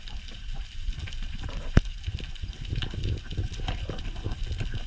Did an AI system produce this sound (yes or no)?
no